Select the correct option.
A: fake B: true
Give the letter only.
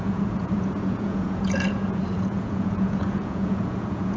A